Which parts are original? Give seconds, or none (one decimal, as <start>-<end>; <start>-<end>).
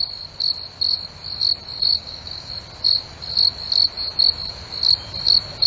0.0-1.9; 2.5-5.7